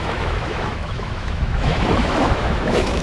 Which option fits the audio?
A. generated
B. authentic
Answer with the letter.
A